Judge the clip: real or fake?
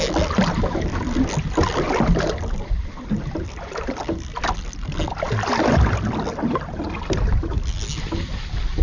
real